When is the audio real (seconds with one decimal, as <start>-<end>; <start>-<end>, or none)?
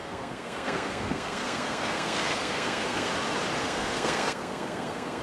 3.1-3.6